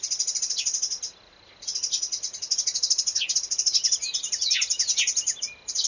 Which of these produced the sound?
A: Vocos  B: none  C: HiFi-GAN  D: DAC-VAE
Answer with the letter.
B